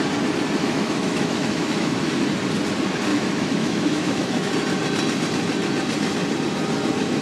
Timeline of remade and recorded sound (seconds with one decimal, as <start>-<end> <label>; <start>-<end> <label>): 0.0-0.6 recorded; 0.6-2.1 remade; 2.1-3.1 recorded; 3.1-4.5 remade; 4.5-7.2 recorded